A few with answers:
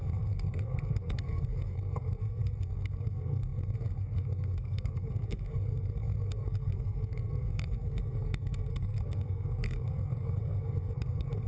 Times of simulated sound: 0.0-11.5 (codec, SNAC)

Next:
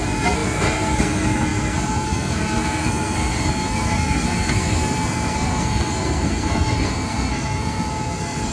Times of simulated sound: 0.0-8.5 (codec, SNAC)